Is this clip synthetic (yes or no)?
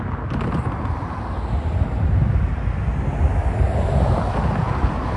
no